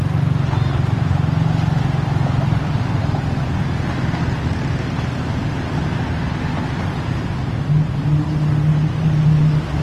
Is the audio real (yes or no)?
yes